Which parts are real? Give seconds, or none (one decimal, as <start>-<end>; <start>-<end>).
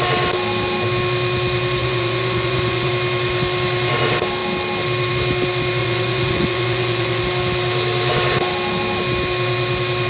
0.0-1.8; 2.9-5.8; 7.2-10.1